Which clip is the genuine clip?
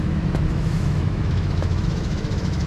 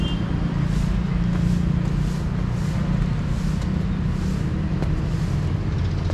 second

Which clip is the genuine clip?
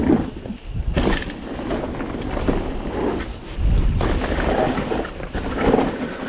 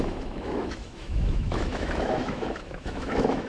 first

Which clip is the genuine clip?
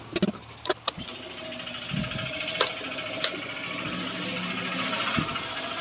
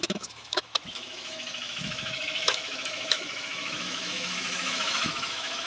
first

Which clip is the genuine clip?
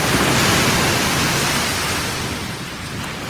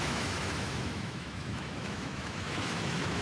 first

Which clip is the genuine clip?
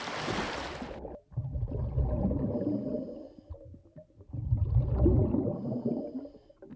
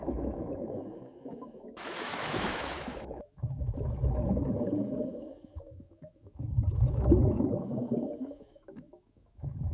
first